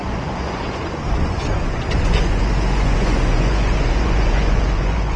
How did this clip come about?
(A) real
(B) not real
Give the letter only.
B